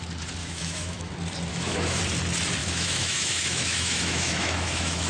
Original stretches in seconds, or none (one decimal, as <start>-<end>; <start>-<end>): 0.0-0.4; 1.1-1.5; 2.0-2.6